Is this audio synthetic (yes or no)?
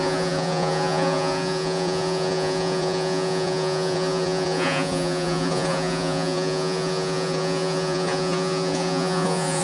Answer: yes